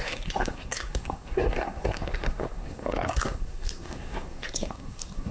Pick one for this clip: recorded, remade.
remade